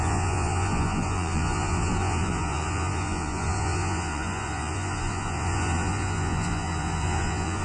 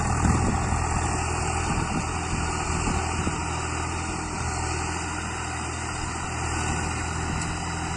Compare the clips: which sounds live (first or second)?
second